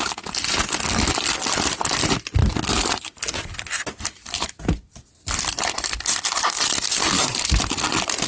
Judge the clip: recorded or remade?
recorded